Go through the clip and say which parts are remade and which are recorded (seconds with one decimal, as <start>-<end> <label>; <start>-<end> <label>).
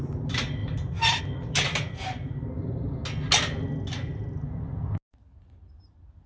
0.0-6.3 recorded